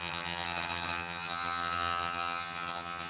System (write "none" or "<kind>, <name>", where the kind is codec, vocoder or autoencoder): vocoder, HiFi-GAN